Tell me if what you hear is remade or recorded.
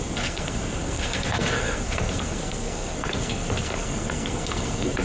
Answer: remade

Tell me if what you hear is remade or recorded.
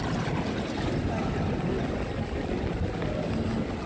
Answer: recorded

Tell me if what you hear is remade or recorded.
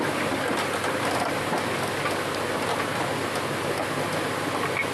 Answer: recorded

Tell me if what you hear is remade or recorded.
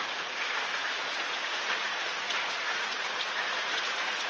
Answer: remade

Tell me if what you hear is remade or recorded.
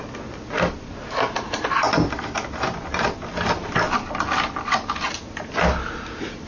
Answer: recorded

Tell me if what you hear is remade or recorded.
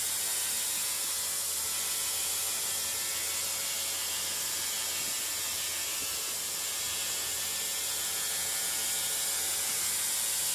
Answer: recorded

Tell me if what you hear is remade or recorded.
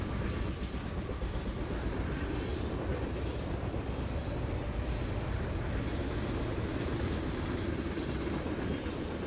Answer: recorded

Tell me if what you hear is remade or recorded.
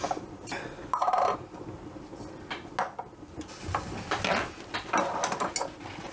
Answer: recorded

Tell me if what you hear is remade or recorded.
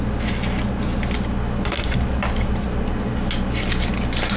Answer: recorded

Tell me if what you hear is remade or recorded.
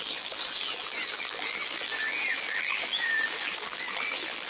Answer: remade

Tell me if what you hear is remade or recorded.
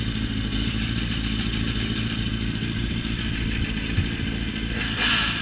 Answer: recorded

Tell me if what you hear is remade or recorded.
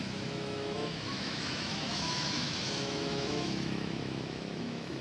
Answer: remade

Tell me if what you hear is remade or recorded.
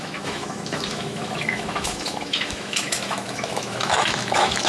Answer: remade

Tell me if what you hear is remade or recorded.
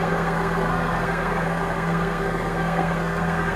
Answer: remade